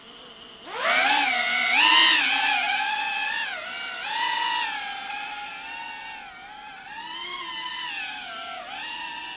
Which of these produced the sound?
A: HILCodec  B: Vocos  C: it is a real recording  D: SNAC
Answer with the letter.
C